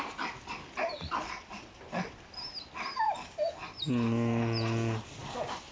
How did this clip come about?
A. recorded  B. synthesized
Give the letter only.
A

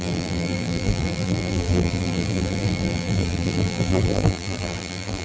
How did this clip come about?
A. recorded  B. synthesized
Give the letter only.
B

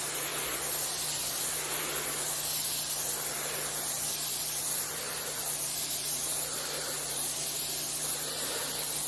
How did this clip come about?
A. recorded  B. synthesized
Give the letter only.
B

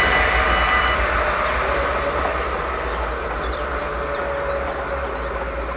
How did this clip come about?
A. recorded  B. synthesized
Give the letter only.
A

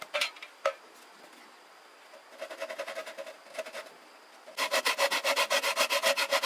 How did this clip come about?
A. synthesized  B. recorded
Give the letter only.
B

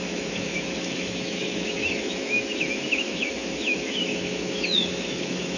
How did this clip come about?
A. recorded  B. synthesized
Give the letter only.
B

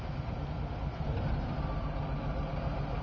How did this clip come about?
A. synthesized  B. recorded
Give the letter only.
B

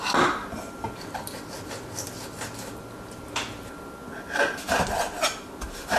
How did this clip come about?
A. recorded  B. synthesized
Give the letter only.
A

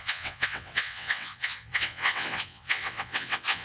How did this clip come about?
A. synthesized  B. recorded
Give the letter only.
A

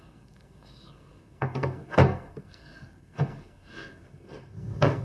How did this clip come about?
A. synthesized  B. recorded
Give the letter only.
A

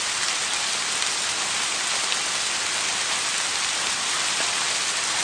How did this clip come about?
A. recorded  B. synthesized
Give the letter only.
A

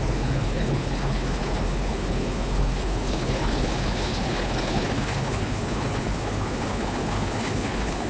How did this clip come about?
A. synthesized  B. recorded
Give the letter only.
A